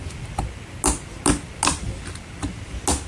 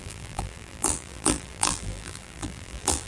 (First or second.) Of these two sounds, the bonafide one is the first